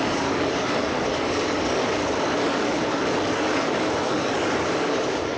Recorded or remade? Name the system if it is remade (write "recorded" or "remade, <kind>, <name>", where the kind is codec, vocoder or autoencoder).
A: remade, codec, DAC